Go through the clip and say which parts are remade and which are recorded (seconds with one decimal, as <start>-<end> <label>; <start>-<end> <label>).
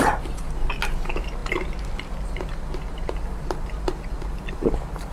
0.0-5.1 recorded